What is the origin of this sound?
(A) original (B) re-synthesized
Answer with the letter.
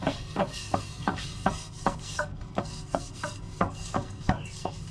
B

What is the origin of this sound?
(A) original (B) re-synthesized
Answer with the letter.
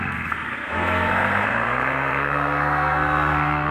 B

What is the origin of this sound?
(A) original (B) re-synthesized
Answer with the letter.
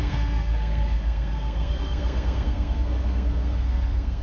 B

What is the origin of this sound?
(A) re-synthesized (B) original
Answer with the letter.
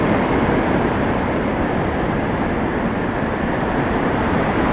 B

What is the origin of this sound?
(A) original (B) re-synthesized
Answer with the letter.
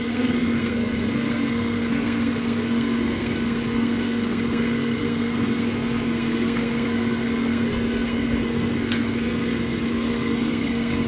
B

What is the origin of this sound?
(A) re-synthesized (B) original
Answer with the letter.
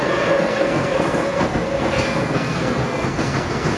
A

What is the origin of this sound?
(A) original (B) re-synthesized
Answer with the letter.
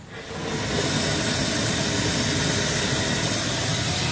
A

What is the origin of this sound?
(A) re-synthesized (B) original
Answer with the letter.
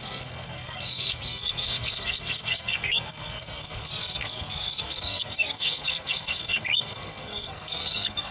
A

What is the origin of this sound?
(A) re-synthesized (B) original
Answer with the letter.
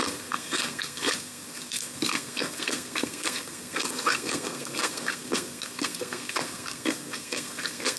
A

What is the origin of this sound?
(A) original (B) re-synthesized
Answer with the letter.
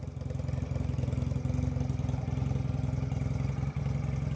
A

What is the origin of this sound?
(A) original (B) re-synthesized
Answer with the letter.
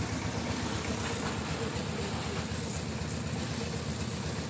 A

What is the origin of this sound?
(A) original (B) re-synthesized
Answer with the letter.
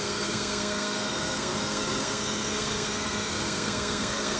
B